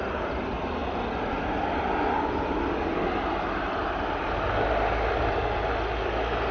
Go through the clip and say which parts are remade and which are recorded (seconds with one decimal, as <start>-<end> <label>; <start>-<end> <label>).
0.0-6.5 recorded